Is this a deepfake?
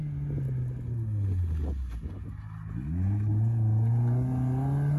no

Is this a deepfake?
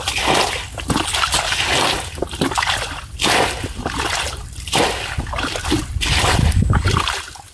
no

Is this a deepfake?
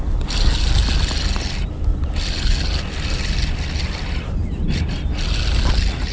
no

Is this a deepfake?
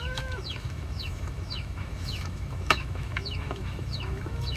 yes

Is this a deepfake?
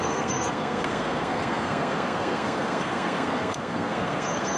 yes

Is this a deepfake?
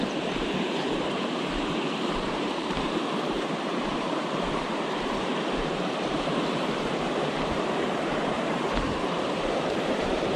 yes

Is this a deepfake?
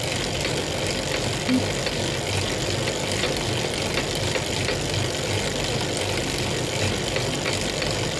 no